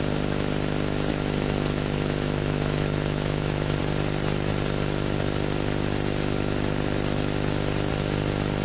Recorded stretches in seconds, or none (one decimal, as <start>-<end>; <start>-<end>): 0.0-1.1; 3.8-8.6